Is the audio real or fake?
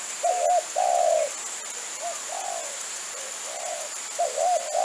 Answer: real